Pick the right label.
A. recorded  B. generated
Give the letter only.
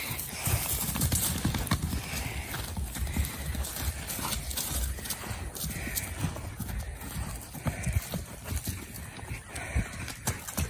A